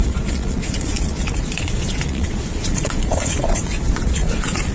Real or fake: fake